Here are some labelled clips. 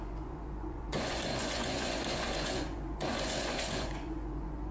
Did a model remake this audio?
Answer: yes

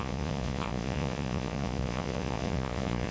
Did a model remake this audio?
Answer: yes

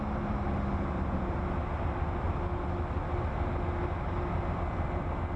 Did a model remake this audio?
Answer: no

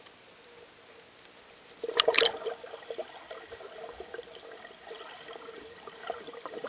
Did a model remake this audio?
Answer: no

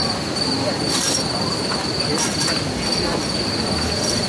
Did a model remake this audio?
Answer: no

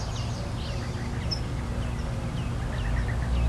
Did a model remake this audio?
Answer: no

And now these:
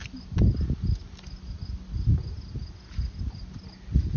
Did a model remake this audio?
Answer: no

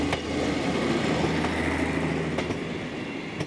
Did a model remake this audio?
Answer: no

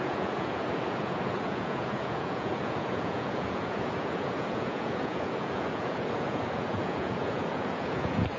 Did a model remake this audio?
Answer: yes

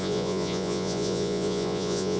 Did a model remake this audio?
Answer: yes